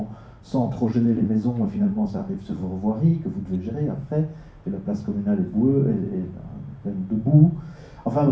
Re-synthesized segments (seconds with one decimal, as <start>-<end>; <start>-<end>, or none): 0.6-2.6